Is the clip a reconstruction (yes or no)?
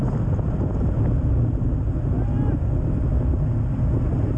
no